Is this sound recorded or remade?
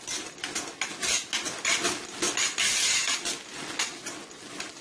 recorded